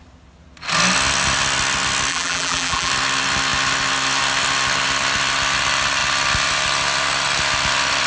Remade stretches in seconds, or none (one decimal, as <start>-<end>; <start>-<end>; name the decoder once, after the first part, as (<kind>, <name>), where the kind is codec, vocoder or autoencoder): 2.1-2.9 (vocoder, BigVGAN v2)